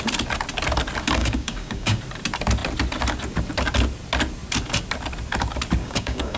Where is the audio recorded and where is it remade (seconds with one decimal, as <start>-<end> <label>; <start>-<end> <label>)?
0.0-1.2 recorded; 1.2-2.0 remade; 2.0-5.8 recorded; 5.8-6.4 remade